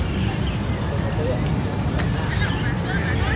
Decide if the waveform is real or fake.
real